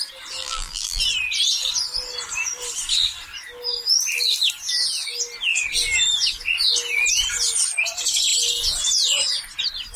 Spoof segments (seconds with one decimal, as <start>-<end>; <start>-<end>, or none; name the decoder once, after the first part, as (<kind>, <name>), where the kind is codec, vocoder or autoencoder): 0.4-1.0 (vocoder, BigVGAN v2)